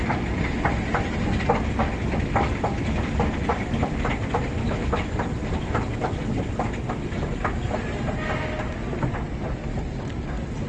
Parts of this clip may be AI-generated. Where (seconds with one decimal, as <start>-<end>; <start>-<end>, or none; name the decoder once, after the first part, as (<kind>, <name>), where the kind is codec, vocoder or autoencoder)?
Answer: 1.8-2.5 (autoencoder, DAC-VAE); 4.6-5.1